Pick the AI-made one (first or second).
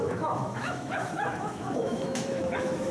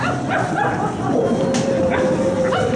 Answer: first